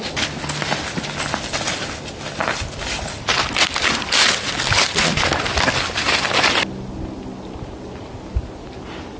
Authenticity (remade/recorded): recorded